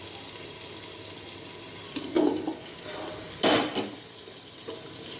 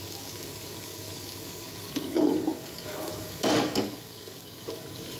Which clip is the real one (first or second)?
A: first